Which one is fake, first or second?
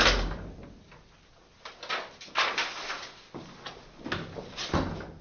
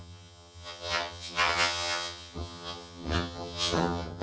second